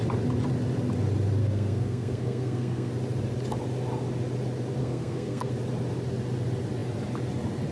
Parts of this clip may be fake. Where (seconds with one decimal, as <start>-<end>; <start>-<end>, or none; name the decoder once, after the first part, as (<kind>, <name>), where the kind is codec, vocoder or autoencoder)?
1.4-2.9 (codec, SNAC); 4.8-5.5